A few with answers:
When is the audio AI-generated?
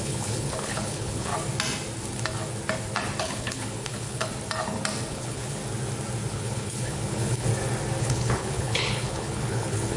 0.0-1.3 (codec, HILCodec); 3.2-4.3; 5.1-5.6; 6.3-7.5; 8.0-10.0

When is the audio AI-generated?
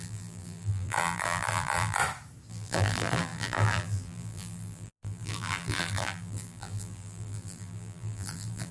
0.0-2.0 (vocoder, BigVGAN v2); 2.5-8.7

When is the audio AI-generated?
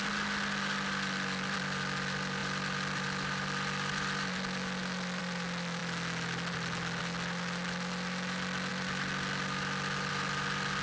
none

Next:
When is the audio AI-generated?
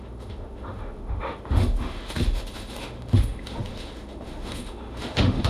0.0-5.5 (autoencoder, DAC-VAE)